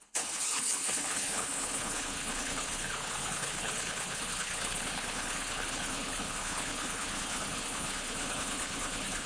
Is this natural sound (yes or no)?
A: no